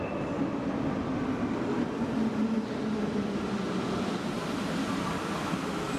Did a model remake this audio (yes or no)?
no